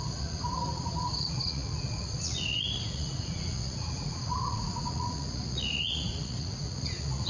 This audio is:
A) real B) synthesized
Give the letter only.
B